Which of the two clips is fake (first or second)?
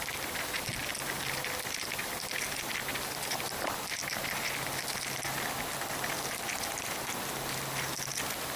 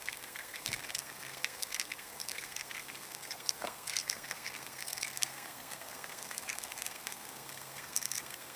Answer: second